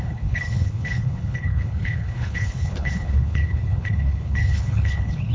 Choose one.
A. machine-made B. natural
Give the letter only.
A